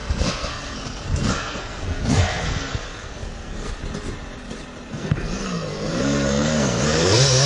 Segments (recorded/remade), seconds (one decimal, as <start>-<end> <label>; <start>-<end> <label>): 0.0-3.8 remade; 3.8-4.9 recorded; 4.9-7.5 remade